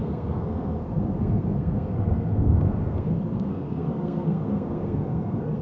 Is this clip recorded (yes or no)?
no